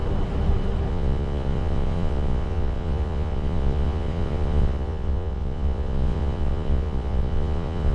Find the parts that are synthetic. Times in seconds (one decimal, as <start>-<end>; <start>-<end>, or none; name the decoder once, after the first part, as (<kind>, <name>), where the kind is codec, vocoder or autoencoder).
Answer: 0.9-7.9 (vocoder, Vocos)

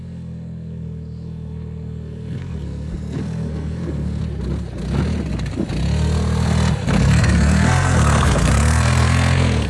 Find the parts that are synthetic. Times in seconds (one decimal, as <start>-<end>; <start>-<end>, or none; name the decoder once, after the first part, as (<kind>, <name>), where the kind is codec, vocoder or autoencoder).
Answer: 0.0-4.2 (codec, SNAC); 7.0-9.7

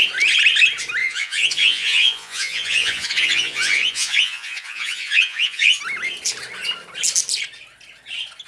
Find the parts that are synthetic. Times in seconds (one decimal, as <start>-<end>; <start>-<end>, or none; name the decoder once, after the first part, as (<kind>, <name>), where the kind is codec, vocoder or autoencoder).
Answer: 1.0-5.8 (vocoder, Vocos)

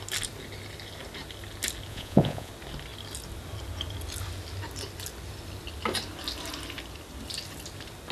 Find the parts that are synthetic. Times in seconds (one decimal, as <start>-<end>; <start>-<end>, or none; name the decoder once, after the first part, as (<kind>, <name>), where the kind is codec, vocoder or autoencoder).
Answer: 1.9-2.5 (vocoder, Vocos)

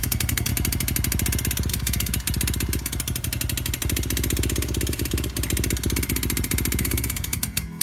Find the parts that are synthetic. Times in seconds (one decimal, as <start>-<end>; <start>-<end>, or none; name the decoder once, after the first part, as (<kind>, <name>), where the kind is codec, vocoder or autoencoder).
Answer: 0.0-0.5 (codec, SNAC); 1.7-2.1; 6.8-7.8

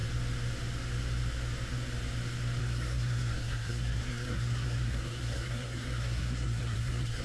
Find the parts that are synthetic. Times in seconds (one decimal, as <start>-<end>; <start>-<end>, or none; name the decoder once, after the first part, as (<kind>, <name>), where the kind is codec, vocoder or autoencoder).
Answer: 2.6-7.2 (codec, SNAC)